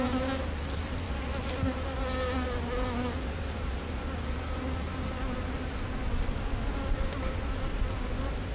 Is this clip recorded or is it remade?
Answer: recorded